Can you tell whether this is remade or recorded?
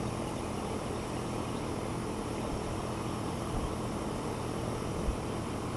remade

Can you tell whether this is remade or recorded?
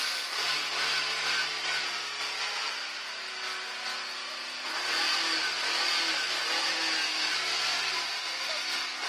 recorded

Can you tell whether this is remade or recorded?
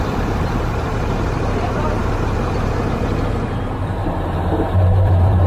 remade